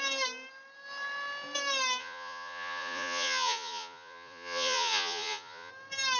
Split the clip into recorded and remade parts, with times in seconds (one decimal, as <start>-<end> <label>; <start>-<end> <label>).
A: 0.0-2.0 recorded; 2.0-5.7 remade; 5.7-6.2 recorded